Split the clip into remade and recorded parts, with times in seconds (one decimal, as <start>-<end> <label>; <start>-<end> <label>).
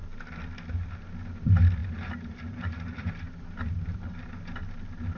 0.0-1.8 recorded; 1.8-4.1 remade; 4.1-5.2 recorded